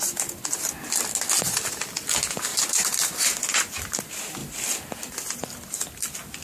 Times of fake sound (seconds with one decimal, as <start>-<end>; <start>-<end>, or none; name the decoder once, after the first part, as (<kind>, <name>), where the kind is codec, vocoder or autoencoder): none